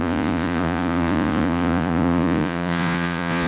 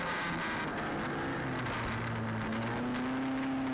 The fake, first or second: first